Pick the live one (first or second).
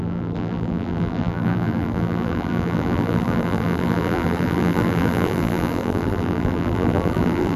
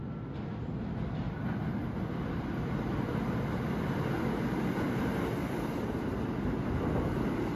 second